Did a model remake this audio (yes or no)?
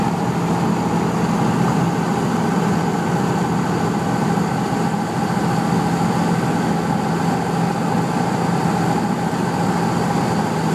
no